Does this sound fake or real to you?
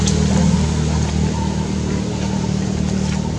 real